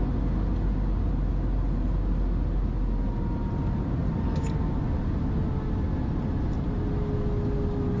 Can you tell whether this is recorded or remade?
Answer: recorded